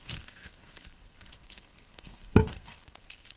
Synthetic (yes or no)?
yes